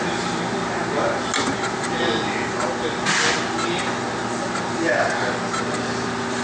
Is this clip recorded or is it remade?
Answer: recorded